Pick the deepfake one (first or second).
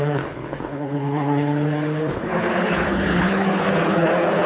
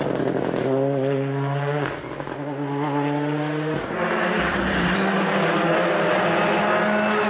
first